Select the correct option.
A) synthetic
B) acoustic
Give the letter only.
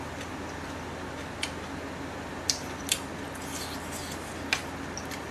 B